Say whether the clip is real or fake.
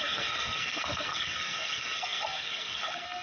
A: fake